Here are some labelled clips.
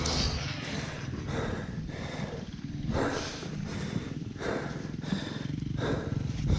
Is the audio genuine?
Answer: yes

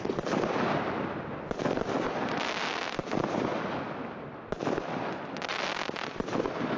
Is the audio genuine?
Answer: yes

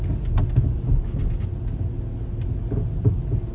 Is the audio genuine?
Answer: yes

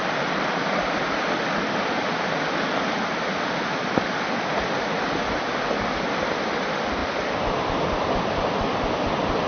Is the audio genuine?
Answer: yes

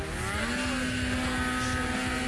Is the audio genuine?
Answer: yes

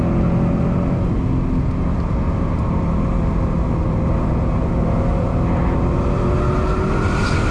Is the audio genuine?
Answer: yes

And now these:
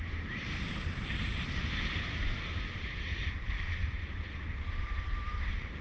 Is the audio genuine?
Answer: no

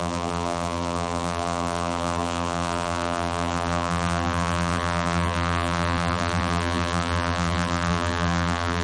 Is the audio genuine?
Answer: no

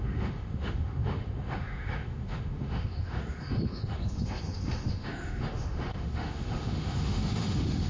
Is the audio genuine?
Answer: no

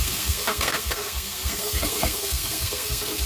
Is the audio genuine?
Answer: no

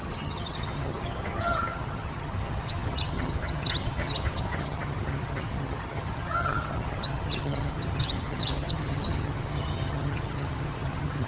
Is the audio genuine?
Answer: no